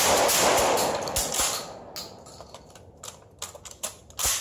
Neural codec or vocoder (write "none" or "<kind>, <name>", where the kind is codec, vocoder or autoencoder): none